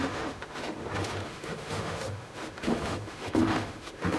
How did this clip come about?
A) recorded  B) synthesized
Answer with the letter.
B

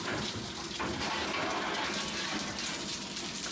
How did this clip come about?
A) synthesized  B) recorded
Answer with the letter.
B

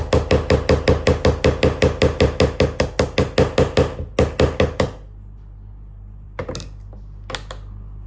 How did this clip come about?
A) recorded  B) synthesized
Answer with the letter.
A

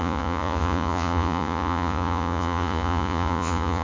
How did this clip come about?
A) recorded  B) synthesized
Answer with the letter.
B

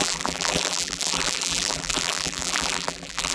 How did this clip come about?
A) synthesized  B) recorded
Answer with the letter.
A